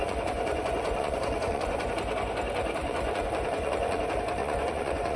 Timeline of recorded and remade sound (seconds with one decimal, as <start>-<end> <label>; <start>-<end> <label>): 0.0-1.9 remade; 1.9-2.8 recorded; 2.8-4.0 remade; 4.0-4.4 recorded; 4.4-5.2 remade